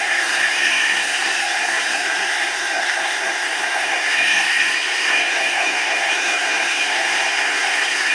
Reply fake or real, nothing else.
fake